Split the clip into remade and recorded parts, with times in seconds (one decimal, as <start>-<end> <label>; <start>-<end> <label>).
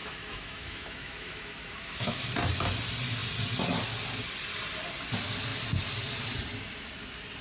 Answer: 0.0-2.2 remade; 2.2-7.4 recorded